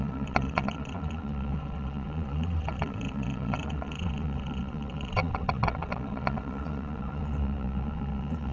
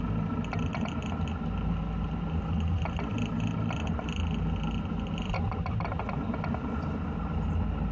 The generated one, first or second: first